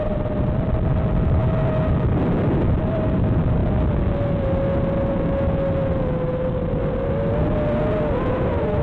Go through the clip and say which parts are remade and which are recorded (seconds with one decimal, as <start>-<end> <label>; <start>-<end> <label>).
0.0-1.4 remade; 1.4-1.9 recorded; 1.9-3.6 remade; 3.6-8.3 recorded; 8.3-8.8 remade